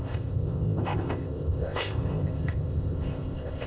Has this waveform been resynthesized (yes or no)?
yes